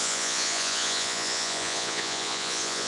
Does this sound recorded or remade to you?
remade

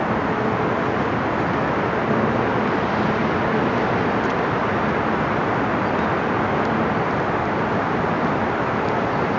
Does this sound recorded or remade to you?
recorded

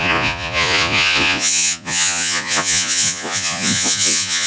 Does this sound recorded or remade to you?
remade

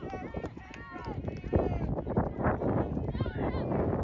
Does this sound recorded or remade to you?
recorded